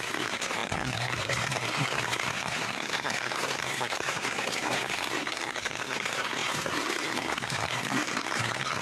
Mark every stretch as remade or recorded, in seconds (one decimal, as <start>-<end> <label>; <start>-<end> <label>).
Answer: 0.0-8.8 remade